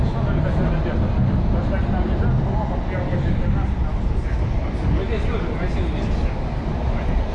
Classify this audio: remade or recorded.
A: recorded